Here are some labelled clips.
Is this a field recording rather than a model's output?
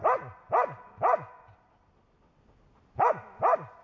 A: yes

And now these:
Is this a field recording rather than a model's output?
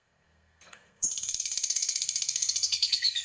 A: no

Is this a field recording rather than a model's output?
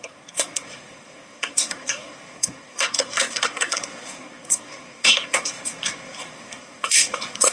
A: no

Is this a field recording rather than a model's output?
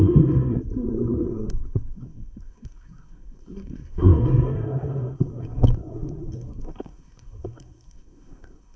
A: no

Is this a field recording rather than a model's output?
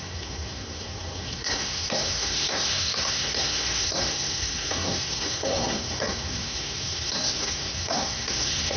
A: no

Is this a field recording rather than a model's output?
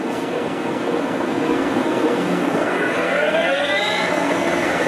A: no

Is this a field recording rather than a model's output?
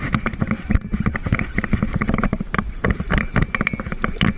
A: yes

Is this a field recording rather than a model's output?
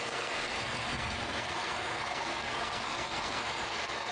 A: no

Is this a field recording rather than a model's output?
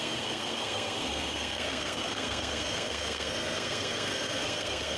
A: no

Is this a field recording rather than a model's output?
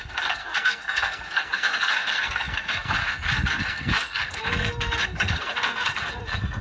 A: no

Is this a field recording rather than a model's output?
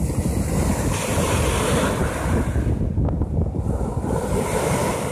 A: yes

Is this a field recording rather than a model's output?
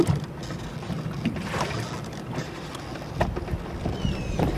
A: yes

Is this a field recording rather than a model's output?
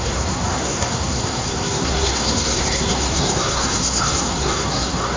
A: no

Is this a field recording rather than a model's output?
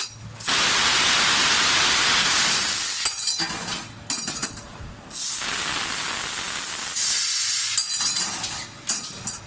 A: yes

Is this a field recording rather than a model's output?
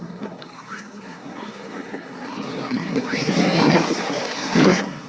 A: no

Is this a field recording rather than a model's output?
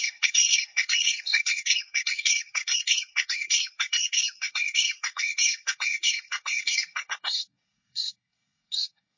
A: no